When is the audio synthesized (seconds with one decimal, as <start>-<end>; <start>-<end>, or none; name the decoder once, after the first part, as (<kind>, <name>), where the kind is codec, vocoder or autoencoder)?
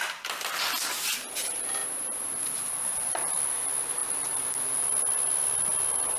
none